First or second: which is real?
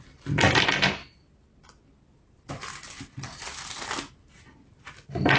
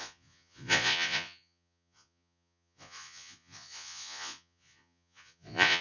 first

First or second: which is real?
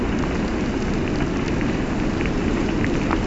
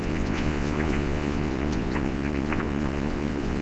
first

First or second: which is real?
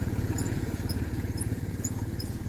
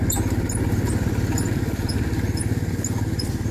second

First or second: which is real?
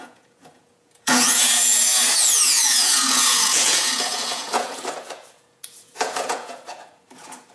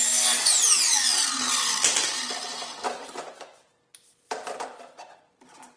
second